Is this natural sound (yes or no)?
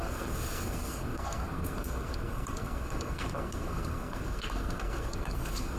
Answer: no